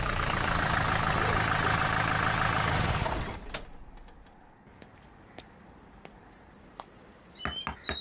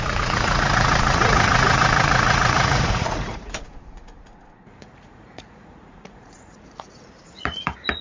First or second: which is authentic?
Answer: first